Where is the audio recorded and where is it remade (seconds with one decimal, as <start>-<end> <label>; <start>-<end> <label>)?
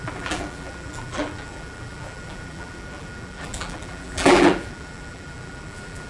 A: 0.0-6.1 remade